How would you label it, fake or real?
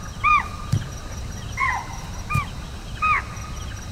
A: real